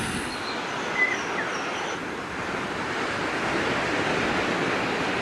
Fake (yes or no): no